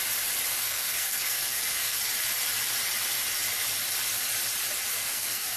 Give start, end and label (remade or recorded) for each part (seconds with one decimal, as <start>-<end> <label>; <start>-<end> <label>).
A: 0.0-0.6 recorded; 0.6-2.0 remade; 2.0-4.9 recorded; 4.9-5.6 remade